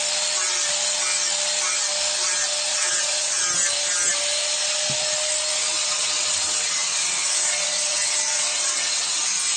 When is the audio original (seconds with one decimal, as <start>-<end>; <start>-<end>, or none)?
0.0-2.7; 3.4-5.8; 9.2-9.6